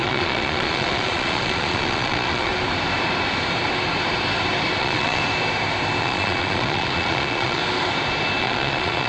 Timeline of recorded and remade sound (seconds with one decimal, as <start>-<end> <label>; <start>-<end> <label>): 0.0-2.5 remade; 2.5-4.8 recorded; 4.8-5.2 remade; 5.2-6.0 recorded; 6.0-7.6 remade; 7.6-8.4 recorded; 8.4-9.1 remade